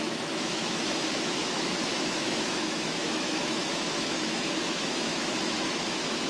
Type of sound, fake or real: fake